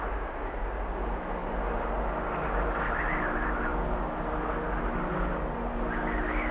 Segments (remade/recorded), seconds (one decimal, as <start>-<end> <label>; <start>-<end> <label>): 0.0-6.5 recorded